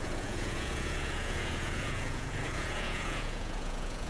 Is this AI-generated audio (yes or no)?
yes